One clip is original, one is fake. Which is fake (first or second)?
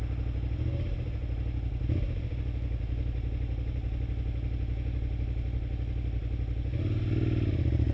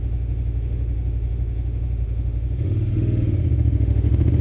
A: second